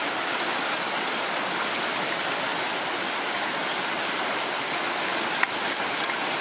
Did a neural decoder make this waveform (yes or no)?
no